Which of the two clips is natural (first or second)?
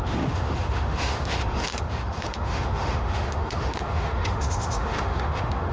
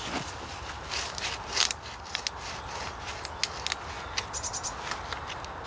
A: second